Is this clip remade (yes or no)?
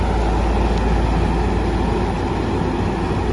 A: no